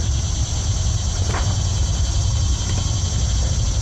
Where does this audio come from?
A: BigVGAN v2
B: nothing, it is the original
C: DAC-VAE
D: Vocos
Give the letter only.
B